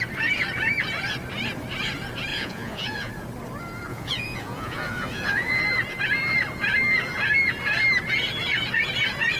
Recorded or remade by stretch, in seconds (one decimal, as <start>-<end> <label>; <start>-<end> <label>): 0.0-2.3 recorded; 2.3-3.1 remade; 3.1-3.9 recorded; 3.9-5.6 remade; 5.6-9.4 recorded